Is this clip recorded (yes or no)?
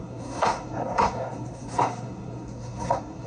no